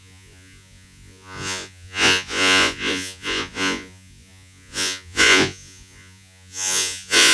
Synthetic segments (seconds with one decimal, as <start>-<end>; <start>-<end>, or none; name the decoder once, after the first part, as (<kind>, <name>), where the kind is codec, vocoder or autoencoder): 0.0-7.3 (vocoder, Vocos)